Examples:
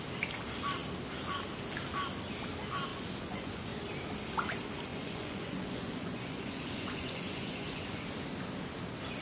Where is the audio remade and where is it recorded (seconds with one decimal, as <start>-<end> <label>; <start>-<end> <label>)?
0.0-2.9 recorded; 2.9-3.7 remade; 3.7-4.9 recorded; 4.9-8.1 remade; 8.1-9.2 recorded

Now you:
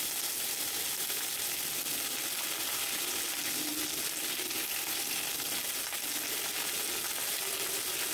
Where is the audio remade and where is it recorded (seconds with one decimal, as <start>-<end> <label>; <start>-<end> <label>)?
0.0-8.1 recorded

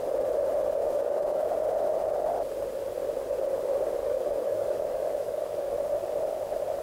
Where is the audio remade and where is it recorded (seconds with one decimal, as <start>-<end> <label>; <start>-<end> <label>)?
0.0-0.8 recorded; 0.8-1.5 remade; 1.5-4.0 recorded; 4.0-5.7 remade; 5.7-6.8 recorded

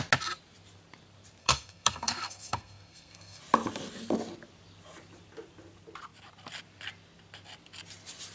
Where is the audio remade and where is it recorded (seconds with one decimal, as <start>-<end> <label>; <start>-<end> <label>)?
0.0-1.4 recorded; 1.4-3.4 remade; 3.4-8.3 recorded